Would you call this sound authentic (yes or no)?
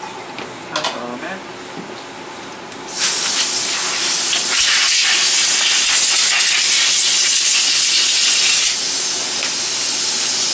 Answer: yes